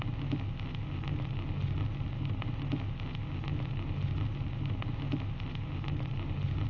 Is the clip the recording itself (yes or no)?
yes